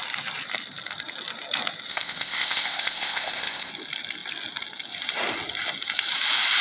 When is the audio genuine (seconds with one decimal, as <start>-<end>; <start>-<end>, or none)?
0.0-1.9; 3.7-6.6